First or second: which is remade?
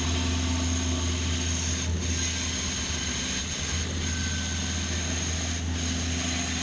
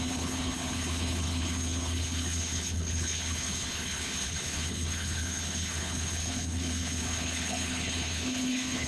second